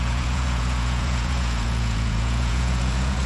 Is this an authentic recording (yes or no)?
no